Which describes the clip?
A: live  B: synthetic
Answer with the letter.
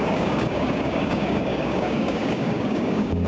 B